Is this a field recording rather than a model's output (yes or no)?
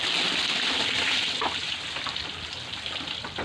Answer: yes